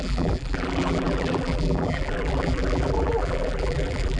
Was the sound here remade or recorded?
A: remade